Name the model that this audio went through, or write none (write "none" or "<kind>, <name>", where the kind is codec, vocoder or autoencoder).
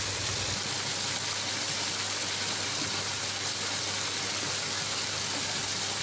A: none